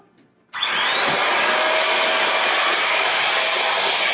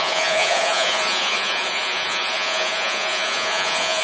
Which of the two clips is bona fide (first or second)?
first